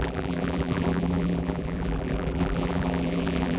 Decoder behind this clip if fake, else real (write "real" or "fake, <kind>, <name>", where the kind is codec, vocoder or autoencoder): fake, vocoder, BigVGAN v2